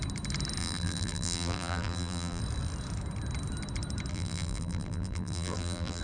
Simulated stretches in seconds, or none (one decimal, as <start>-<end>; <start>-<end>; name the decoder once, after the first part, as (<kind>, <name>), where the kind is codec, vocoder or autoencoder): 0.6-2.4 (vocoder, BigVGAN v2); 4.1-6.0